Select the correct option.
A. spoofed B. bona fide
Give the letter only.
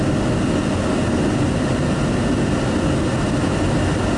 B